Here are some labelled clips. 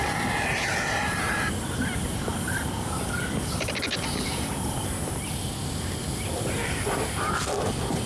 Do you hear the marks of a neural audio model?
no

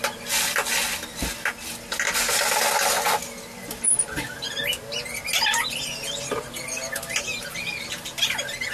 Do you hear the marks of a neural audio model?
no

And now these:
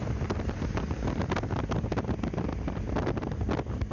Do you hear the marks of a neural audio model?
no